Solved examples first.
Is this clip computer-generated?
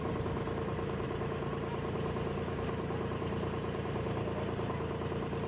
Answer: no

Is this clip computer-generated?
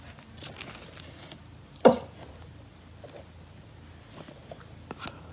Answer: no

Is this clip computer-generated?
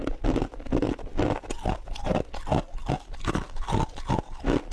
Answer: no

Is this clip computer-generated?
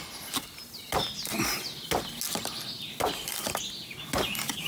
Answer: no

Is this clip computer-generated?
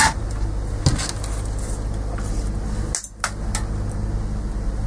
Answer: no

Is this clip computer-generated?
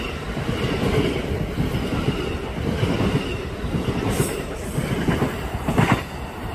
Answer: no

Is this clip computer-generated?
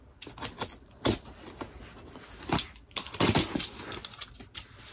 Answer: no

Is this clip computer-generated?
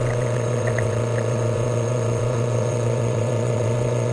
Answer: yes